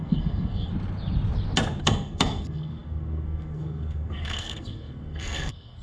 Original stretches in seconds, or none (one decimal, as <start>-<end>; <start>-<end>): 0.7-1.8